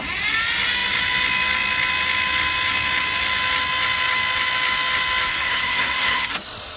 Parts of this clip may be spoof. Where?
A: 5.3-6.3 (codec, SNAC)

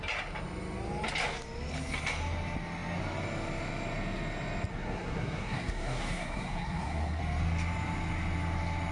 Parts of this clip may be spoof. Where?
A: 4.7-7.2 (codec, SNAC)

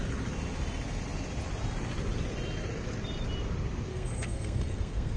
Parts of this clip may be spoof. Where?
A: 3.9-5.2 (codec, SNAC)

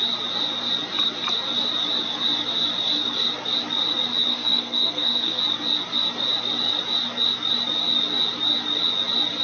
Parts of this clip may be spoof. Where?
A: 4.3-5.4 (codec, SNAC)

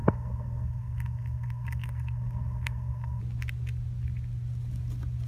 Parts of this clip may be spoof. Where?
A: 0.0-3.2 (codec, SNAC)

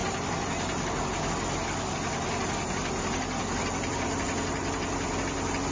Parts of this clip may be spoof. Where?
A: none